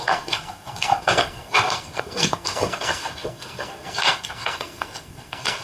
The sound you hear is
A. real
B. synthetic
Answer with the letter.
B